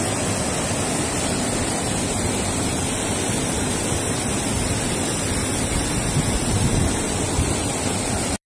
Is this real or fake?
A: real